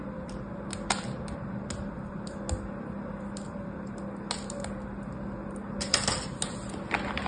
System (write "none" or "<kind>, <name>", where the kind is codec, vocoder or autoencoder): none